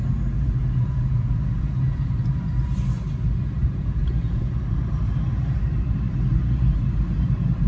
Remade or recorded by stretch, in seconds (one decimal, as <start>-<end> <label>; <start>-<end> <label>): 0.0-0.6 recorded; 0.6-2.1 remade; 2.1-3.6 recorded; 3.6-4.5 remade; 4.5-7.7 recorded